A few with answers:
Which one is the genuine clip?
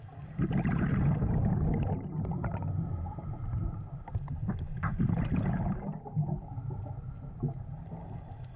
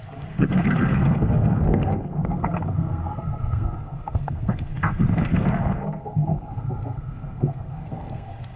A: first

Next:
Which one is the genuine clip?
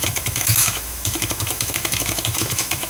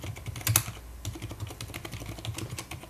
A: second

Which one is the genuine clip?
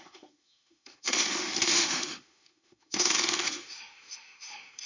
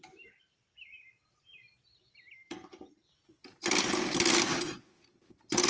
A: second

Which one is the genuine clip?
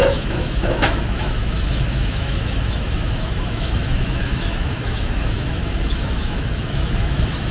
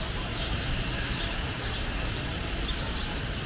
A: second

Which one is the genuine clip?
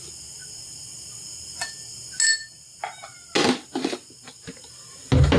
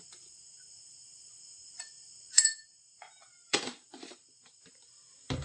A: first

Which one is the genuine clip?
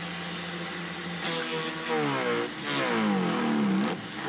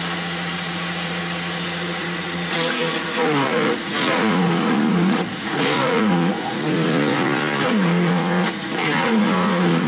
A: first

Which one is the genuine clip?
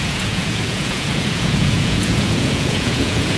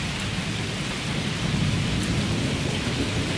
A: second